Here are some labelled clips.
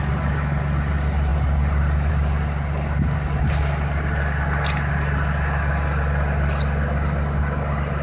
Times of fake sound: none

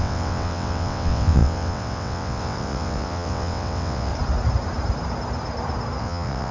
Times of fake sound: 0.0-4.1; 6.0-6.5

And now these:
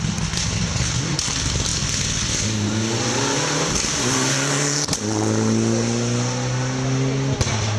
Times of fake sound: none